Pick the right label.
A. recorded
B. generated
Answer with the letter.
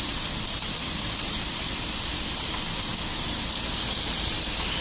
A